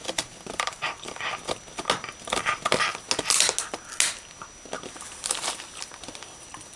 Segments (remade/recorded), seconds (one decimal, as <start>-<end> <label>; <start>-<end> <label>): 0.0-1.0 remade; 1.0-6.8 recorded